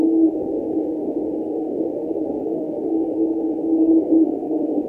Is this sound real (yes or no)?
no